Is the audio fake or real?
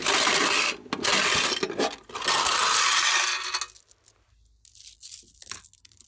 real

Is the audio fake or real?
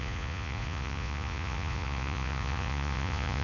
fake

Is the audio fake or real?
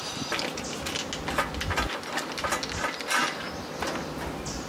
real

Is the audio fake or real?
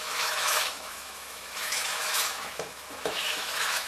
fake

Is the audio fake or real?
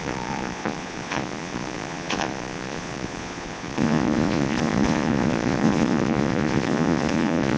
fake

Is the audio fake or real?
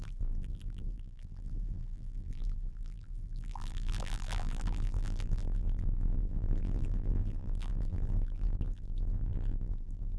fake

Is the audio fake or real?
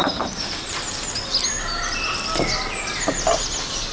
real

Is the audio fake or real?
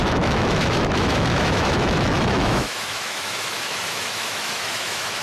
fake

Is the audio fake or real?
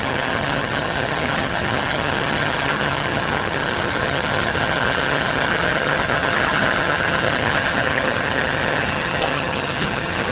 fake